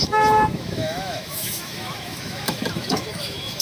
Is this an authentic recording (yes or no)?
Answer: no